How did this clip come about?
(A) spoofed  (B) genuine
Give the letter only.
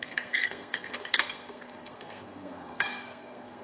A